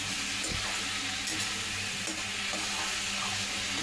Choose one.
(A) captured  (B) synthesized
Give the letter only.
A